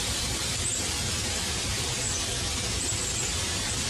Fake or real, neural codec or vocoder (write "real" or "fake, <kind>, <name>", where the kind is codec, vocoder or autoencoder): real